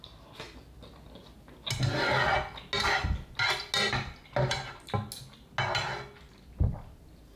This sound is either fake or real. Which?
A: real